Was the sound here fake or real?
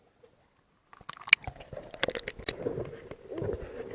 real